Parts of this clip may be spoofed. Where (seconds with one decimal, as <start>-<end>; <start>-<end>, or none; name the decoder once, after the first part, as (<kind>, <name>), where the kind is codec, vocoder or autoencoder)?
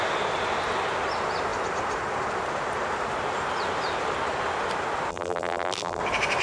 5.1-6.0 (vocoder, BigVGAN v2)